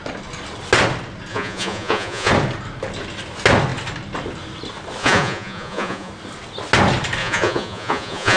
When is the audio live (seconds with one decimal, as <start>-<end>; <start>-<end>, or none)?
0.0-1.3; 2.3-5.0; 6.1-7.2

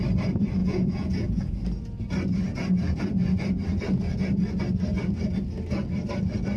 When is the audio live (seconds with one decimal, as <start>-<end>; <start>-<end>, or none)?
0.0-0.6; 1.6-6.6

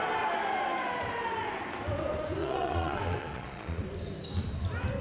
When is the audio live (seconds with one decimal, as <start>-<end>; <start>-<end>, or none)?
0.0-2.4; 3.8-5.0

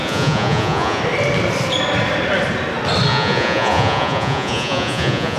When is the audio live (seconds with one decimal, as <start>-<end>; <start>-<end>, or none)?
1.0-3.1

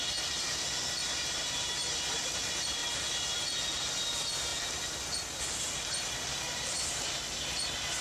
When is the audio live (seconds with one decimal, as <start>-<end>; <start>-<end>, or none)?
0.0-8.0

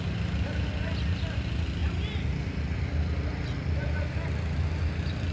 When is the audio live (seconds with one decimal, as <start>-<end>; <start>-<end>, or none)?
0.0-5.3